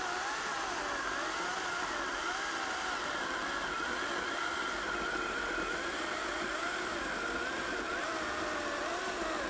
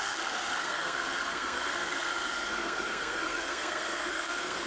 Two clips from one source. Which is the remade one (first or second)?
second